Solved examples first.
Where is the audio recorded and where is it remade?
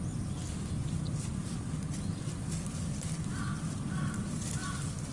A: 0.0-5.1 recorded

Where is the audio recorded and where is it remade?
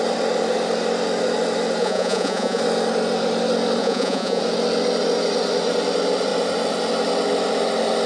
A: 0.0-1.8 recorded; 1.8-2.6 remade; 2.6-3.8 recorded; 3.8-4.4 remade; 4.4-8.1 recorded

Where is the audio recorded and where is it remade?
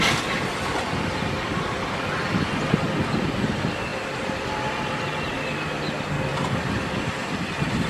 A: 0.0-7.9 recorded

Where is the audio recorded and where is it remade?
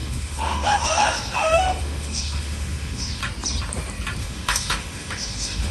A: 0.0-3.2 remade; 3.2-4.2 recorded; 4.2-5.7 remade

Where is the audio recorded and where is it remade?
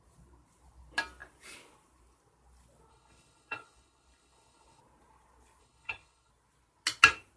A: 0.0-2.9 recorded; 2.9-4.8 remade; 4.8-5.6 recorded; 5.6-6.3 remade; 6.3-7.4 recorded